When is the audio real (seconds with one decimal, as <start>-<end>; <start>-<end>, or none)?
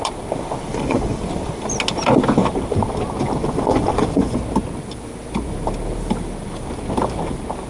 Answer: 0.0-0.7; 1.2-3.4; 4.4-7.7